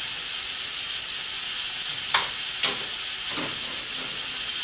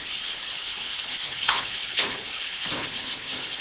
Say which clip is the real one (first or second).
first